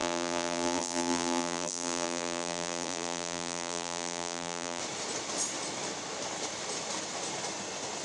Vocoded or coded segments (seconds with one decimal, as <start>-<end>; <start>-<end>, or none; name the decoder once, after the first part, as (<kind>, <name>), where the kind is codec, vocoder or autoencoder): 0.0-4.8 (vocoder, BigVGAN v2)